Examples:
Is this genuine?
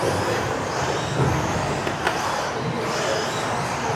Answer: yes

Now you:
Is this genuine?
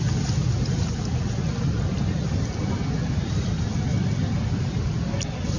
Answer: yes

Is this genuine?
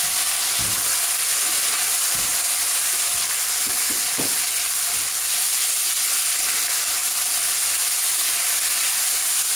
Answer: yes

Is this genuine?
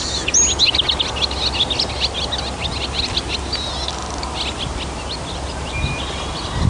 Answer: yes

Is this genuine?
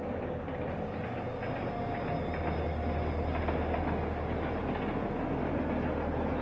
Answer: yes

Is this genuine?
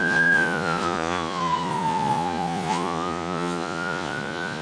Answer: no